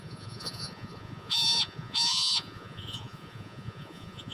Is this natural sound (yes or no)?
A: no